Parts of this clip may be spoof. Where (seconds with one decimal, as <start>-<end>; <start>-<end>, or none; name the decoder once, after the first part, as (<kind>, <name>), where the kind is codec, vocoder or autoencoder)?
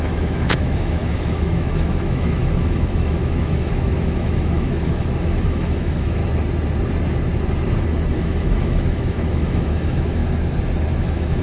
0.0-6.2 (autoencoder, DAC-VAE); 8.1-10.2; 11.0-11.4